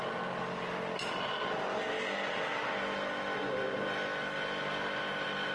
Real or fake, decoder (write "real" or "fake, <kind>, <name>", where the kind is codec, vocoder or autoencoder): real